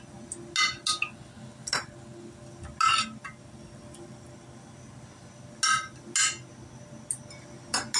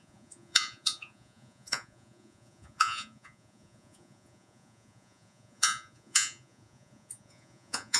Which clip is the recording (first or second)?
first